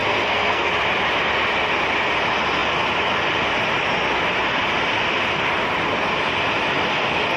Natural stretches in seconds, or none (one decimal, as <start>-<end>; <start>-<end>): 0.7-7.4